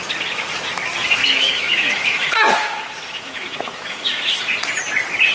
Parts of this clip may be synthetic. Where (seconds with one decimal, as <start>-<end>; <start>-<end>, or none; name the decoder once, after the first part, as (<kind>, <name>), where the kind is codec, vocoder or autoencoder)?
1.2-4.4 (autoencoder, DAC-VAE)